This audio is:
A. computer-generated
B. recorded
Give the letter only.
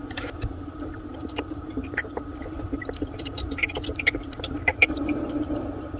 A